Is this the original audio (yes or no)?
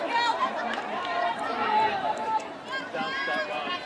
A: no